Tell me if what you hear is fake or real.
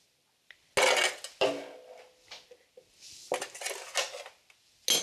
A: real